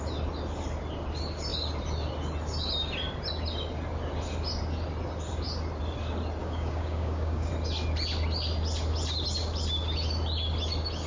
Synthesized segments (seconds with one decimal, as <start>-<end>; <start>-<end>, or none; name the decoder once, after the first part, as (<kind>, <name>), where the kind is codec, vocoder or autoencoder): 6.4-7.5 (codec, DAC)